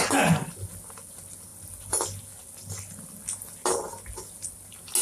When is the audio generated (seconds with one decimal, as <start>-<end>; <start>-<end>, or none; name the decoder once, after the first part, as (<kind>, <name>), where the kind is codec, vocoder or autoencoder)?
none